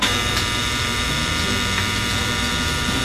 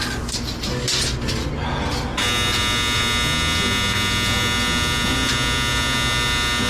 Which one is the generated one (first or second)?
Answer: first